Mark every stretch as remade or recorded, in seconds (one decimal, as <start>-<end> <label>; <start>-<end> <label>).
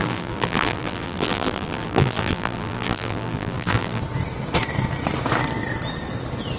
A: 0.0-4.0 remade; 4.0-6.6 recorded